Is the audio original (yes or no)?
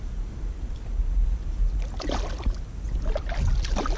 yes